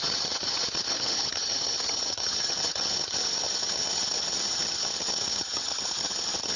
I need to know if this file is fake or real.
fake